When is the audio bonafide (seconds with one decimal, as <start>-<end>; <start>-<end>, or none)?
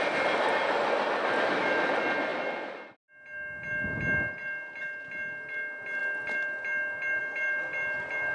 0.0-8.3